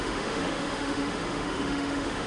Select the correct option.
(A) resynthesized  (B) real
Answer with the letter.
A